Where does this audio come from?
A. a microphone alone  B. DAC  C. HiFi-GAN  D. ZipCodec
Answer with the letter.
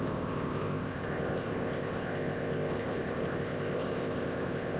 D